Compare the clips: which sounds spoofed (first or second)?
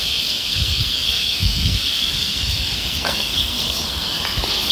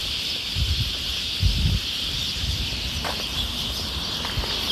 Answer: first